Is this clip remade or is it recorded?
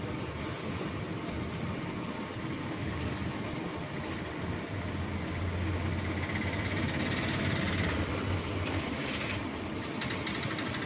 recorded